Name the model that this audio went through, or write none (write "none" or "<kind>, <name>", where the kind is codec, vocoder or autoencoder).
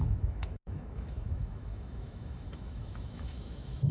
autoencoder, DAC-VAE